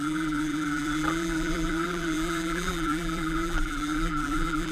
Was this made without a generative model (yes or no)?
no